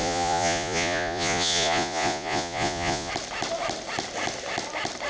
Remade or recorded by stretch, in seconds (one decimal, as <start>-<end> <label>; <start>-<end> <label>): 0.0-3.1 remade; 3.1-5.1 recorded